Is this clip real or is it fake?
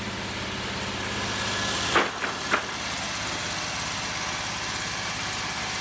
real